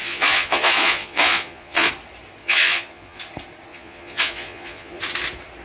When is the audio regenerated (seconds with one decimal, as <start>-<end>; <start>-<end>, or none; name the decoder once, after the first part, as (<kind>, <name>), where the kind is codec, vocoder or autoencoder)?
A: 0.0-1.9 (vocoder, Vocos); 2.4-3.2; 3.7-5.0